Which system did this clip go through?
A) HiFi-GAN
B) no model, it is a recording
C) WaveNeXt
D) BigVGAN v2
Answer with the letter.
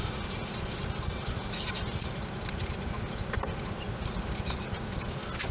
B